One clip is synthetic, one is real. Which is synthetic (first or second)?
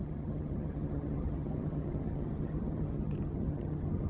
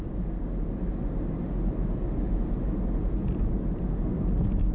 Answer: first